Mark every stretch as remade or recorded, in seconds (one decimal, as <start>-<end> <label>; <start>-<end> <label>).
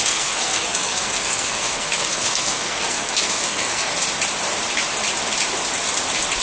0.0-3.9 remade; 3.9-6.4 recorded